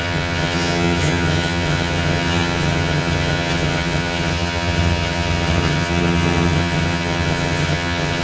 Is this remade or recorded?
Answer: remade